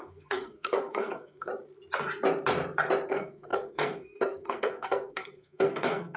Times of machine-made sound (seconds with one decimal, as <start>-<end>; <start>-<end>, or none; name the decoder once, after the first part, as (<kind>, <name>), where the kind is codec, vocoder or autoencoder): 0.0-1.5 (codec, SNAC); 3.1-6.2